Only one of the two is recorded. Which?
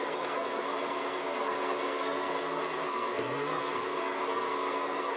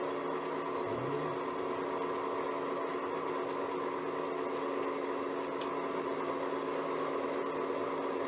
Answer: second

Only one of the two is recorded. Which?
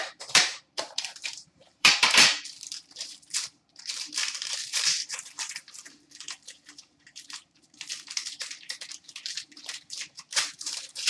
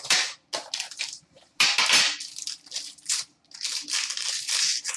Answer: second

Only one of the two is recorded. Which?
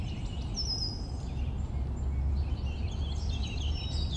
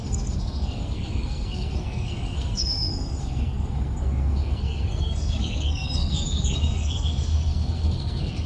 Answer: first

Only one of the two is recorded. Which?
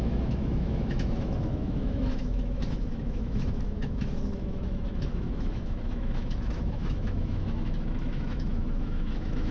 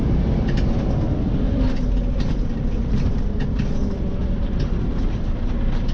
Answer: second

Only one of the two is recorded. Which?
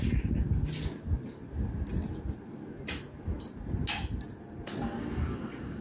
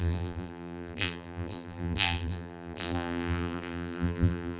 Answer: first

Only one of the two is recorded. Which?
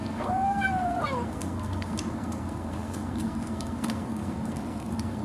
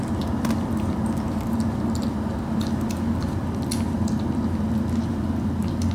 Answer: second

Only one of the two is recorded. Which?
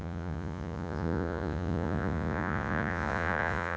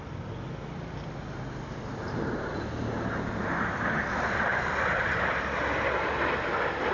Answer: second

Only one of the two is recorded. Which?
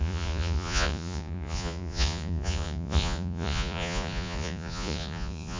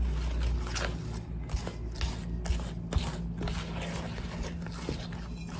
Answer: second